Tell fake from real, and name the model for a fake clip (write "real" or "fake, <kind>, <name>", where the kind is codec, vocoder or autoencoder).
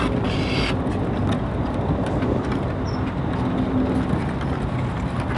real